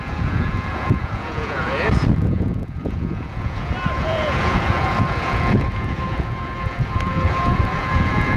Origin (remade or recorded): remade